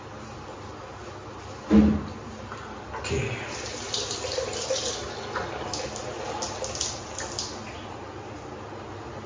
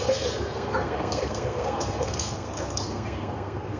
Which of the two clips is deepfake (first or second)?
second